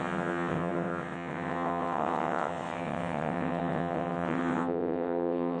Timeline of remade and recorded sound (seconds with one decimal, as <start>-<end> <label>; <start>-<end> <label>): 0.0-5.6 remade